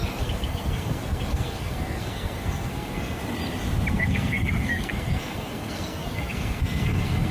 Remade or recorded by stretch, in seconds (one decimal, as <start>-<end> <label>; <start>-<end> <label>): 0.0-3.2 remade; 3.2-3.9 recorded; 3.9-7.3 remade